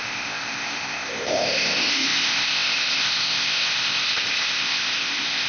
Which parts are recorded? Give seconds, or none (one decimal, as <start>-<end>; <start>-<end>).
none